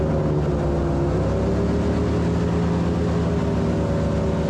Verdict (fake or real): real